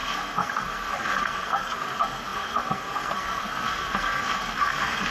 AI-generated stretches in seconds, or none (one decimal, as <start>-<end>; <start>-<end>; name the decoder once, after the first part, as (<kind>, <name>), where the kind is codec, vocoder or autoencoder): 0.0-5.1 (codec, SNAC)